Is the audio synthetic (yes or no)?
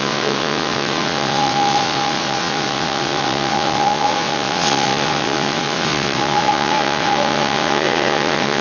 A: yes